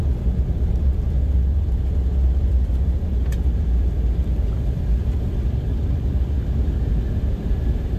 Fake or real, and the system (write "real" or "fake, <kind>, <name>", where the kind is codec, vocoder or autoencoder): fake, vocoder, BigVGAN v2